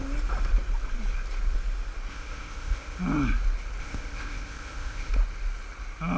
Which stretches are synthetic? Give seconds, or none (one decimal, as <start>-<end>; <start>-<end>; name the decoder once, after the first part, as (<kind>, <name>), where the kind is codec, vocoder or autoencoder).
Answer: 2.1-3.0 (codec, ZipCodec); 3.8-5.1